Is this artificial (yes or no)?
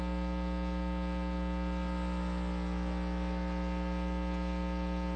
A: no